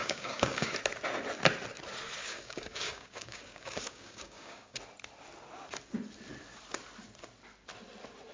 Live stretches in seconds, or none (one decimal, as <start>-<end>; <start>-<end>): 0.7-2.2; 4.8-8.3